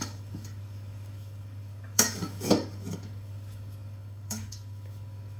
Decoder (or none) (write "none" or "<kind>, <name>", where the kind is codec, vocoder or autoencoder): codec, DAC